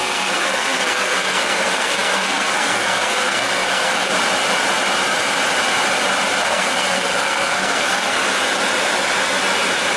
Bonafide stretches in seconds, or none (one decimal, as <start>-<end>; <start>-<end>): 4.1-6.4; 8.2-10.0